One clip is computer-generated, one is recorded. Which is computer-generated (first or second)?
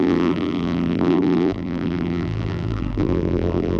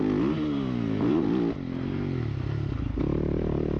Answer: first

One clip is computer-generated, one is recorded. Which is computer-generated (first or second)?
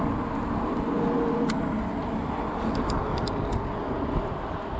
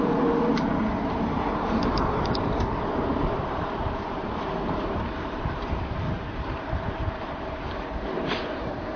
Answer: second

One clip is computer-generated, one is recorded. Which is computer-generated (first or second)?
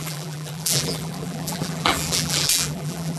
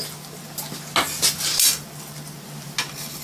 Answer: first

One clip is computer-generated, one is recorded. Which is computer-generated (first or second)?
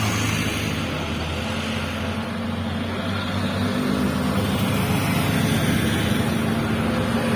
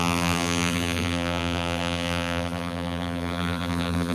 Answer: second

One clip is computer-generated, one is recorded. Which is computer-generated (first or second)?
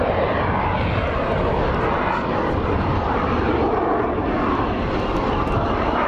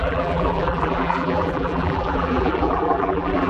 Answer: second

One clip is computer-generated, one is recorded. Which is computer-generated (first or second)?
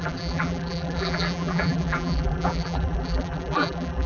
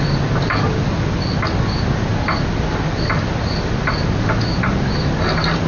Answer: first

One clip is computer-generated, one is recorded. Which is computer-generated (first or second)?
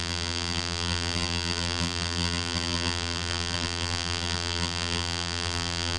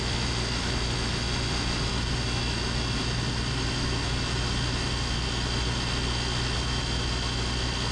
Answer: first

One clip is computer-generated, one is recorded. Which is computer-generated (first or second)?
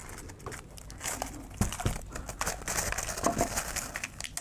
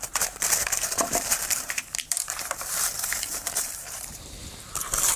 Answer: second